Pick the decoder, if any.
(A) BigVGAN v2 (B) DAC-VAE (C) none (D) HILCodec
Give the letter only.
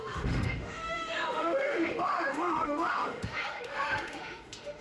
B